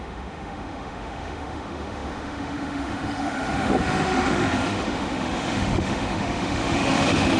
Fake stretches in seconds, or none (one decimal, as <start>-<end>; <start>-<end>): 0.0-7.4